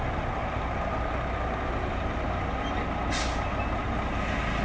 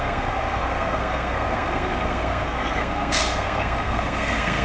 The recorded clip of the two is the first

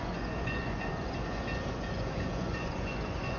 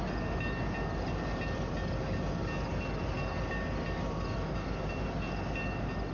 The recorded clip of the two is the second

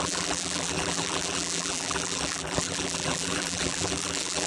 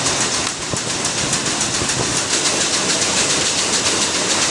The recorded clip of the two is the second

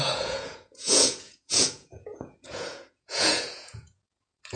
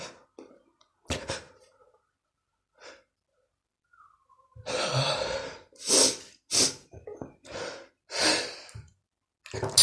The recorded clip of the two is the second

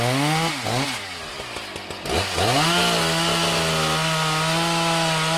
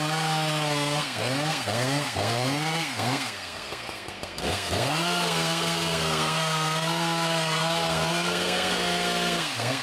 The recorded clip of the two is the first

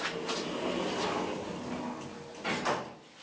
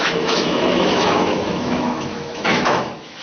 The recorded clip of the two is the first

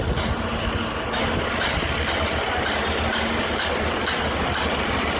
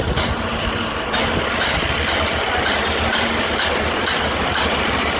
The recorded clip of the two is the first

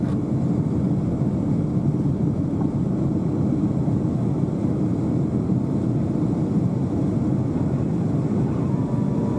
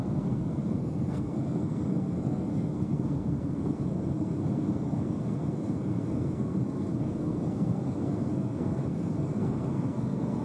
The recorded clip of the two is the first